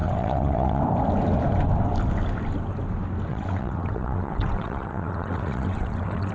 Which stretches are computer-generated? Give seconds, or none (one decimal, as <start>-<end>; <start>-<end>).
0.0-0.8; 3.3-6.3